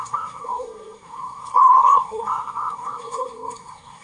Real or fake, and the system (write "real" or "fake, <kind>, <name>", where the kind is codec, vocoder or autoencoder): fake, codec, SNAC